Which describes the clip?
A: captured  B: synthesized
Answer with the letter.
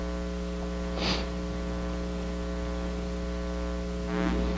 A